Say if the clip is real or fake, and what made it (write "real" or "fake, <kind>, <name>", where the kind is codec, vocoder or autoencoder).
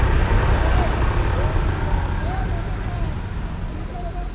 real